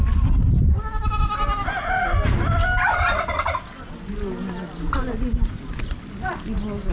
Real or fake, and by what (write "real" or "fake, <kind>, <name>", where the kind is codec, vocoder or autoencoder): real